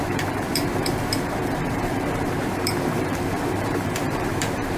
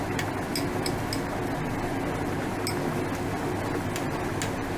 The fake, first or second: first